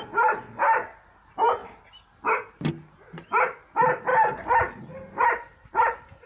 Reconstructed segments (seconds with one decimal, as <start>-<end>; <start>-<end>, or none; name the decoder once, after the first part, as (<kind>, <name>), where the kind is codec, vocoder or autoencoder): 4.1-4.8 (vocoder, BigVGAN v2)